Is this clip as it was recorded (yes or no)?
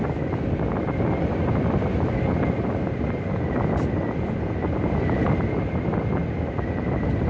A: yes